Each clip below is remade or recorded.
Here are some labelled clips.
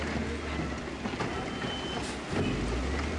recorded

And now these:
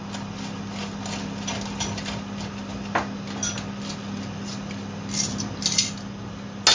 recorded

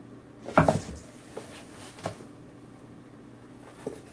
recorded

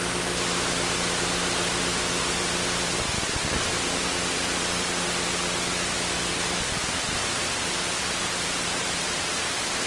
recorded